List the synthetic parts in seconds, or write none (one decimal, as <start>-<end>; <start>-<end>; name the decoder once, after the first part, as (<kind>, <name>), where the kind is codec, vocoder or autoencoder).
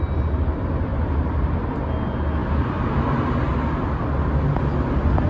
0.9-1.7 (vocoder, BigVGAN v2)